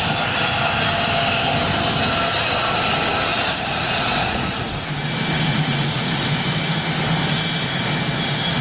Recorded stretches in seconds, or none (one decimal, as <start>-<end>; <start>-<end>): 0.0-3.3; 5.0-5.5; 6.2-8.6